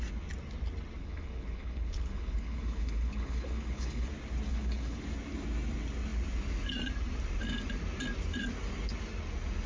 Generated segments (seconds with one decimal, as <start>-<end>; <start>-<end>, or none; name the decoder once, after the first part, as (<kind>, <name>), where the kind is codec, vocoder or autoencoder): 1.0-4.1 (codec, HILCodec); 4.5-5.0